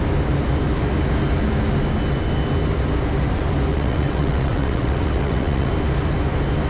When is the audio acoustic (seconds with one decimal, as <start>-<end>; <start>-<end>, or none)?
0.0-3.7; 5.7-6.7